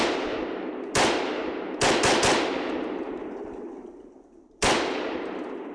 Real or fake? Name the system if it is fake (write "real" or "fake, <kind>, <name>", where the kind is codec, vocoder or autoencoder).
real